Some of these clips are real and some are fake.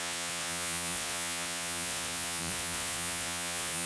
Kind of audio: fake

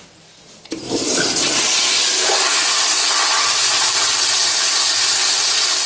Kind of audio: real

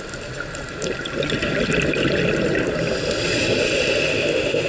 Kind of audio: real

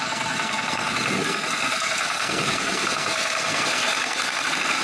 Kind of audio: fake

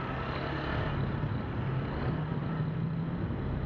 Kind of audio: real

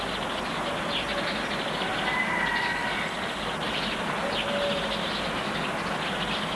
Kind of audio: real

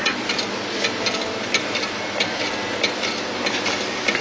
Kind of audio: real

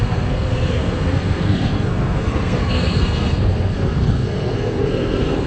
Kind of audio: fake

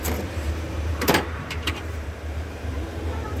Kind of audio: fake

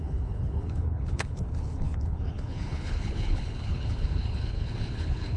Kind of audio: fake